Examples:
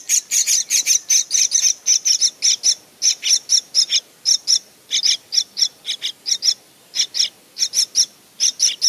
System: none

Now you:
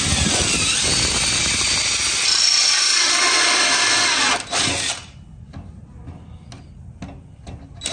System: none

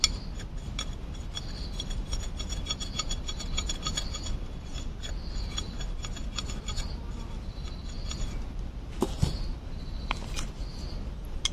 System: none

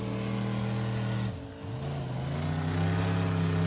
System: none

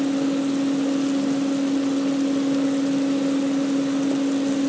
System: none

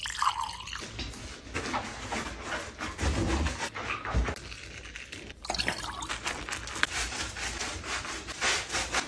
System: none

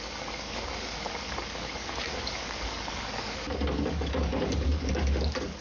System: codec, DAC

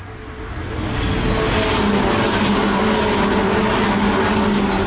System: none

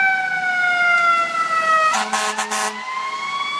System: none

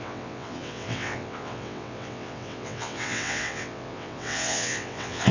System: vocoder, WaveNeXt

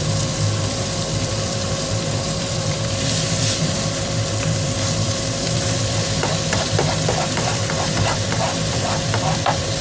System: vocoder, BigVGAN v2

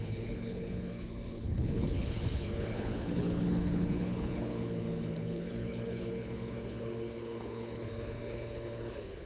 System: codec, HILCodec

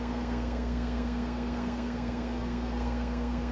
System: codec, SNAC